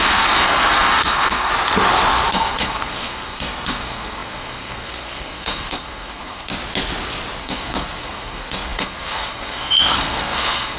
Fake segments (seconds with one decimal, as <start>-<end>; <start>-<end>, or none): 0.0-1.5; 2.3-6.5; 7.4-10.8